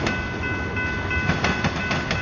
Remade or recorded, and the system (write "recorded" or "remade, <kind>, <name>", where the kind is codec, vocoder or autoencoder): recorded